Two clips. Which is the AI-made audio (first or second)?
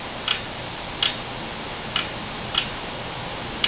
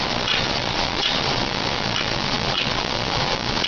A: second